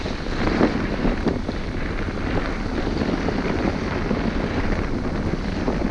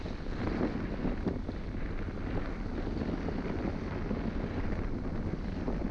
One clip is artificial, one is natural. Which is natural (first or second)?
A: second